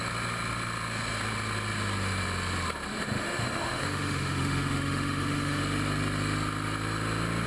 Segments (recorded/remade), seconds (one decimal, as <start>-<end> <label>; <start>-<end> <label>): 0.0-2.9 recorded; 2.9-5.6 remade; 5.6-7.5 recorded